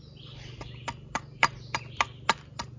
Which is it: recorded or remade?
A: recorded